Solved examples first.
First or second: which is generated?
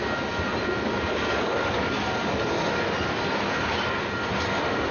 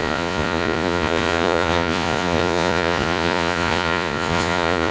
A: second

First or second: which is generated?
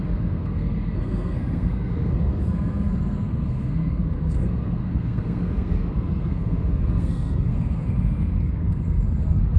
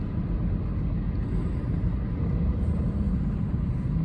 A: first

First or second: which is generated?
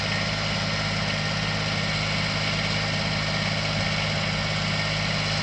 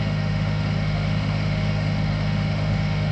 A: second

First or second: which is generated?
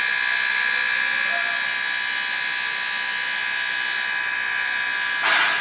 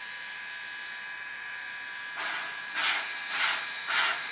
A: second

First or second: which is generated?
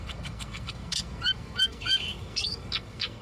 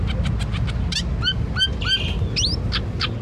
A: first